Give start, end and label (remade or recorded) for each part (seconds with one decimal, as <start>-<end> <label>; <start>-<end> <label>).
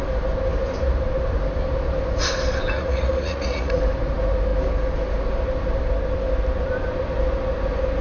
0.0-2.8 recorded; 2.8-3.8 remade; 3.8-8.0 recorded